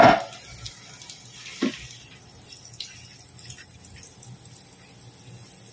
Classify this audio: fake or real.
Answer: real